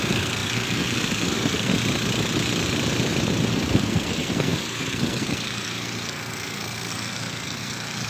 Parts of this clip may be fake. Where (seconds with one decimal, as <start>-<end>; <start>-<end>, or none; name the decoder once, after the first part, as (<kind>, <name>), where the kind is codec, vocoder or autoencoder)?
0.0-1.7 (codec, SNAC); 3.5-8.1